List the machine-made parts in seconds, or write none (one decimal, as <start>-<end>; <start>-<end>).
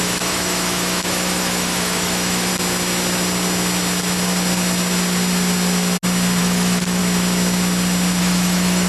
0.0-2.5; 6.4-7.0; 8.2-8.9